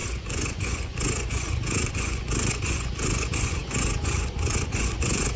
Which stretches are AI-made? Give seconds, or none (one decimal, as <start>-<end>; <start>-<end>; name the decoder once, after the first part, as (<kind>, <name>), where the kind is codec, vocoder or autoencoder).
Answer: 0.0-5.4 (vocoder, Vocos)